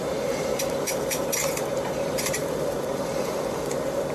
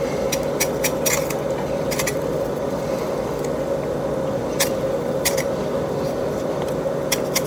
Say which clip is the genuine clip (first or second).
second